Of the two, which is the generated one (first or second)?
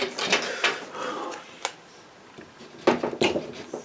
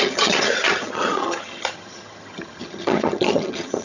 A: second